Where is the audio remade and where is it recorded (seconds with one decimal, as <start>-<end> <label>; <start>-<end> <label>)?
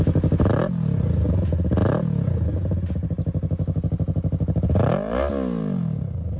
0.0-6.4 recorded